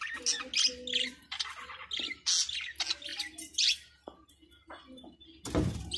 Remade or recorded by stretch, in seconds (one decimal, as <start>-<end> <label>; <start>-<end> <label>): 0.0-6.0 recorded